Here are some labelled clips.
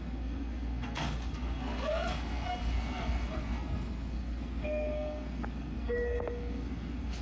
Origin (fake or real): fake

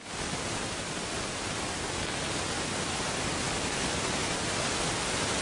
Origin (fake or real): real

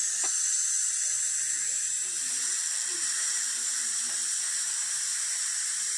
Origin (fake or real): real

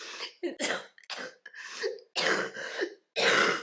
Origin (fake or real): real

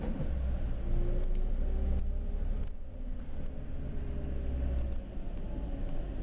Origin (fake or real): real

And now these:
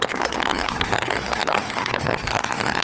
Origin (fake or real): fake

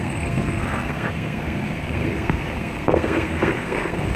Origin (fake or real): fake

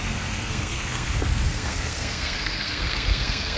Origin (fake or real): fake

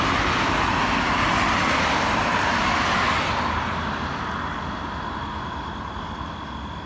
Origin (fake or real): real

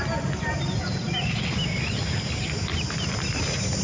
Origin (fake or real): real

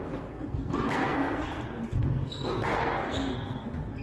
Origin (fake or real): fake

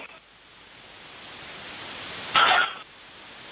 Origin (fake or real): real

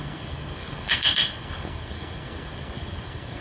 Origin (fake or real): fake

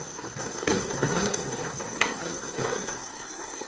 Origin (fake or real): fake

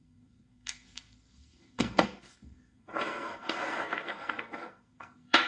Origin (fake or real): fake